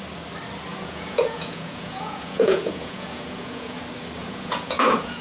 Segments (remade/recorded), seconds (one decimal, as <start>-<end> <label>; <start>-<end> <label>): 0.0-0.7 recorded; 0.7-3.8 remade; 3.8-4.2 recorded; 4.2-5.2 remade

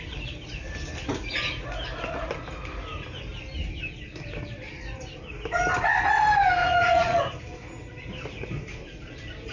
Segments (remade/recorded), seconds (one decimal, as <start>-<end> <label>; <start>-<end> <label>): 0.0-6.6 recorded; 6.6-7.2 remade; 7.2-9.5 recorded

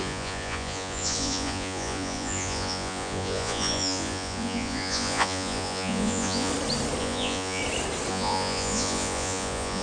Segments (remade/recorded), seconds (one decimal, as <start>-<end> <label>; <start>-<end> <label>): 0.0-6.5 remade; 6.5-7.0 recorded; 7.0-7.6 remade; 7.6-8.1 recorded; 8.1-9.8 remade

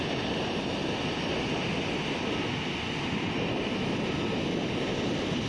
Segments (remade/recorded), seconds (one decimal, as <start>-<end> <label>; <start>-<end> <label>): 0.0-5.5 recorded